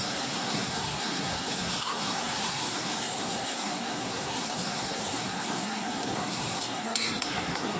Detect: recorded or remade remade